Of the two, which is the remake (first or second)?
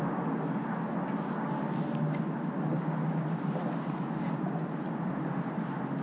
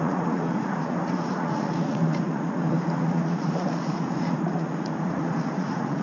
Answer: second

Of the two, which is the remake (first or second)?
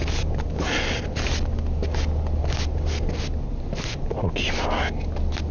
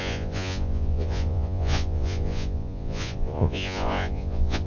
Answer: second